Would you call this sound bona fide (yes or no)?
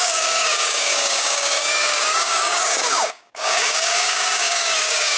no